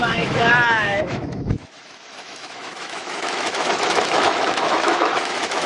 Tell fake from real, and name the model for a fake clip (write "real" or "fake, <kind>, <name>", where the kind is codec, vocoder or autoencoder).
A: fake, autoencoder, DAC-VAE